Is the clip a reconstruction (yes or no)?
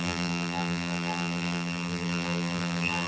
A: yes